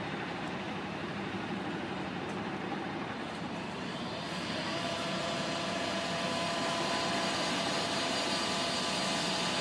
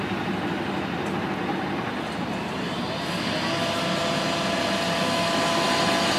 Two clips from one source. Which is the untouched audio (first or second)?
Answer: second